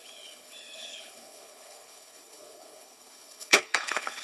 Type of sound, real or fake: fake